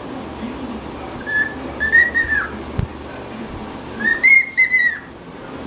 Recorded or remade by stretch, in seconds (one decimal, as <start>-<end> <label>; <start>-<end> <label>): 0.0-2.9 recorded; 2.9-3.5 remade; 3.5-4.1 recorded; 4.1-4.7 remade; 4.7-5.7 recorded